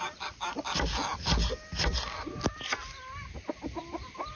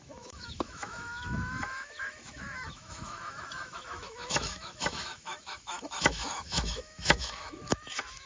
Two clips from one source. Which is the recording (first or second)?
first